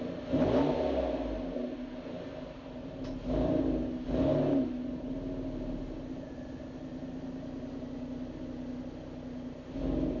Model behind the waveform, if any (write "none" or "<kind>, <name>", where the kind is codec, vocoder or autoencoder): none